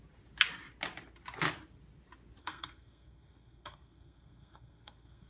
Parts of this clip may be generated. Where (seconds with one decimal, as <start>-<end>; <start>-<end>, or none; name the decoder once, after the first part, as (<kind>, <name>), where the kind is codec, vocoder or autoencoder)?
2.4-5.3 (codec, SNAC)